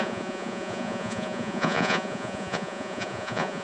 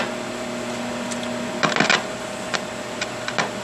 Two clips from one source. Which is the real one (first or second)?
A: second